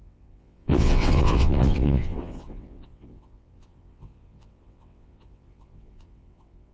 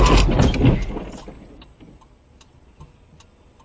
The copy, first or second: first